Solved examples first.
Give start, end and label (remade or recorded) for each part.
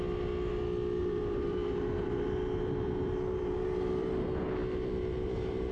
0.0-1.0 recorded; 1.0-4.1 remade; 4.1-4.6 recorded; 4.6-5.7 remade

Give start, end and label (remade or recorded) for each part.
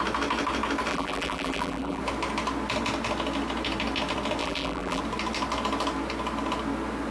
0.0-0.9 recorded; 0.9-2.0 remade; 2.0-4.4 recorded; 4.4-5.0 remade; 5.0-7.1 recorded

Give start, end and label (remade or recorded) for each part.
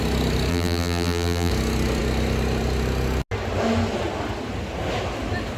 0.0-0.5 recorded; 0.5-1.5 remade; 1.5-5.6 recorded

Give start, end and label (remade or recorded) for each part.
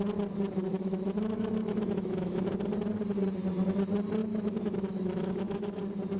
0.0-0.7 recorded; 0.7-2.5 remade; 2.5-4.2 recorded; 4.2-5.8 remade; 5.8-6.2 recorded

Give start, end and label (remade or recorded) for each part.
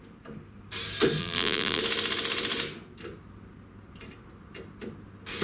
0.0-1.2 recorded; 1.2-1.8 remade; 1.8-5.4 recorded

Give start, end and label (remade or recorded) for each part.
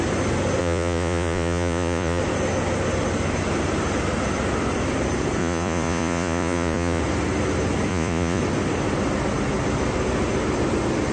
0.0-0.6 recorded; 0.6-2.2 remade; 2.2-5.4 recorded; 5.4-7.0 remade; 7.0-7.9 recorded; 7.9-8.4 remade; 8.4-11.1 recorded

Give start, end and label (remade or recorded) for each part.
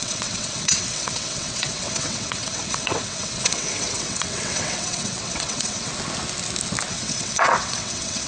0.0-5.9 remade; 5.9-6.9 recorded; 6.9-8.3 remade